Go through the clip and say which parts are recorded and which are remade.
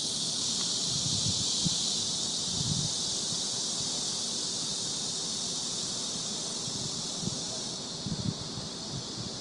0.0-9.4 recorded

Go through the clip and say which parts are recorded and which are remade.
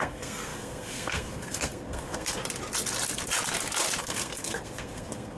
0.0-2.4 remade; 2.4-4.0 recorded; 4.0-5.4 remade